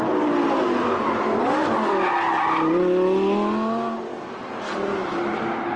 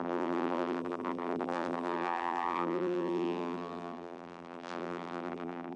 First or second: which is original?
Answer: first